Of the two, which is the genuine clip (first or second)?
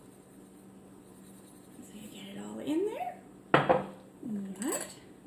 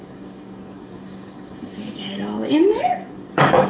first